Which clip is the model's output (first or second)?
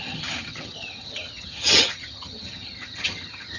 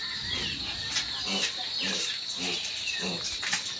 first